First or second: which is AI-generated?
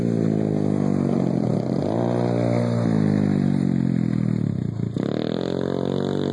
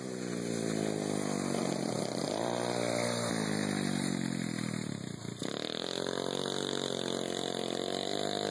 second